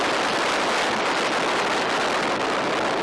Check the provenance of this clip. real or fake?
real